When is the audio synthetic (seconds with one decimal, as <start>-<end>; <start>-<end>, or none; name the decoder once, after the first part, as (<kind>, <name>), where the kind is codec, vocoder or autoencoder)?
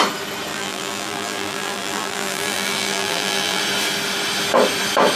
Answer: 0.5-3.6 (vocoder, BigVGAN v2)